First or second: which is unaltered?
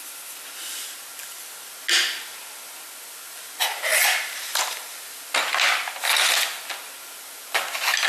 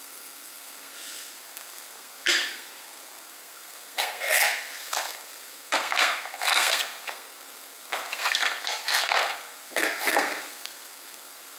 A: first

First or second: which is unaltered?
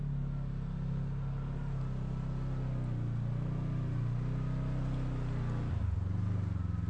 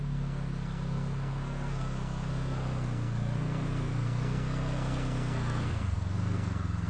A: first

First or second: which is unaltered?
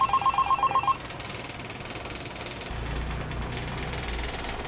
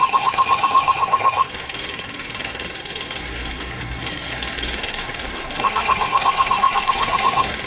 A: first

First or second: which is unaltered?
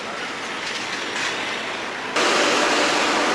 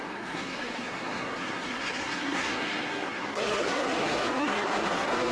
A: first